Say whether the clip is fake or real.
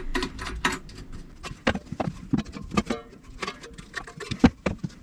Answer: real